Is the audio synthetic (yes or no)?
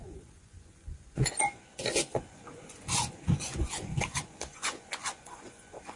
yes